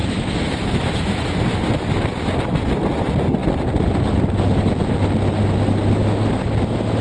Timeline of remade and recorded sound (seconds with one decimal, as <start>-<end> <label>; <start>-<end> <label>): 0.0-1.4 remade; 1.4-7.0 recorded